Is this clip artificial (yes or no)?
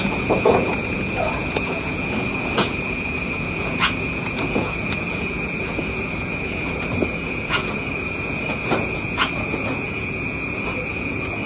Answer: yes